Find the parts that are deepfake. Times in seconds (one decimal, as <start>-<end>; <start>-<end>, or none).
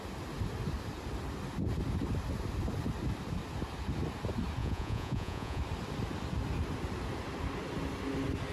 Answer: 4.6-5.6